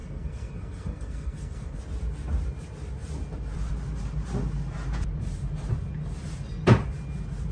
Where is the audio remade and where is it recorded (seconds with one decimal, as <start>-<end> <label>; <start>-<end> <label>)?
0.0-1.8 remade; 1.8-7.5 recorded